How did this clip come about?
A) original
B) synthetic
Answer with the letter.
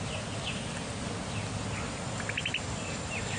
A